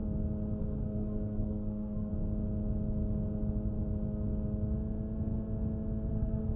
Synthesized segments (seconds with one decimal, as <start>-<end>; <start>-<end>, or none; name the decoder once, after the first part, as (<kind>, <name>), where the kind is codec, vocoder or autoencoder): 0.6-2.1 (codec, SNAC); 6.1-6.6